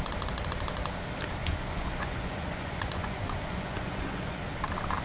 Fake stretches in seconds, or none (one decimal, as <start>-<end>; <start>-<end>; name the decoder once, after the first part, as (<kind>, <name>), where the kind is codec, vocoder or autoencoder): 1.4-4.4 (vocoder, Vocos)